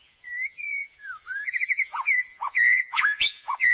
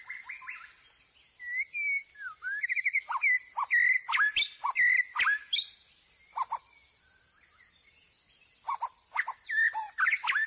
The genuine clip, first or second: second